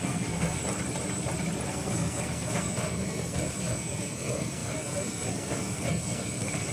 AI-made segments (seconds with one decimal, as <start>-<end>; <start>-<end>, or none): 0.0-0.6; 1.7-6.7